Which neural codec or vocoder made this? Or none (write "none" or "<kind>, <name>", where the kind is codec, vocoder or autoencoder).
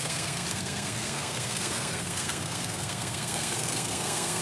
codec, SNAC